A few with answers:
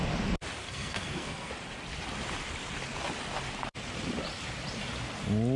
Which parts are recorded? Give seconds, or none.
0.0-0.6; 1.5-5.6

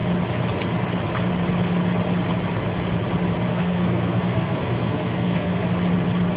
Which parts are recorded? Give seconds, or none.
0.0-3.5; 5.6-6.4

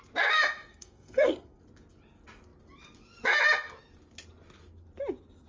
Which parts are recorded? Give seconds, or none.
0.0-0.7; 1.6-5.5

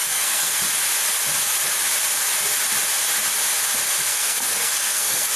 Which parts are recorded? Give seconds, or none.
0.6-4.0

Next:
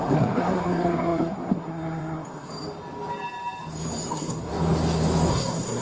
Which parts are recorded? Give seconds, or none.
2.5-4.1; 4.5-5.3